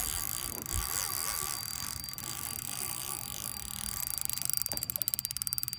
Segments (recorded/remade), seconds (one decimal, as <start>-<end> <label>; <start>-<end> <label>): 0.0-5.8 recorded